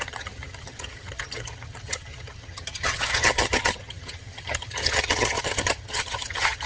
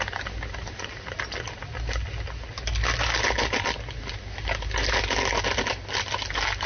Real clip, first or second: second